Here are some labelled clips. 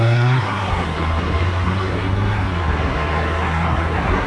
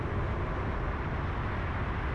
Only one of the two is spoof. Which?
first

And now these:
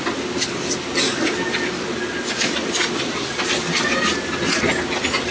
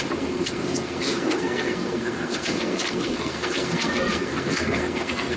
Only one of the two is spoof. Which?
second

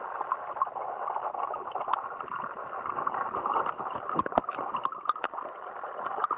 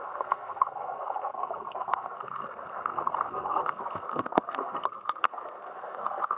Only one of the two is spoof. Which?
second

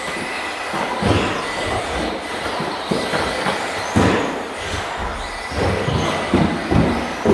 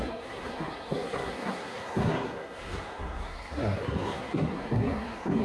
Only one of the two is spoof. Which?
second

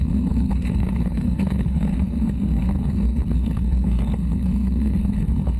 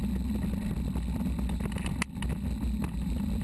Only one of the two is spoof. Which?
first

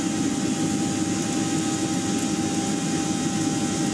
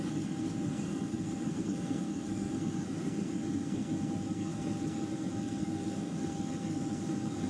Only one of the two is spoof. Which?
second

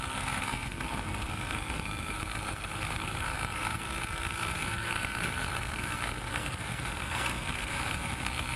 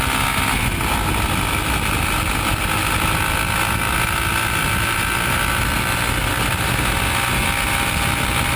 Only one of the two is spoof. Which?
first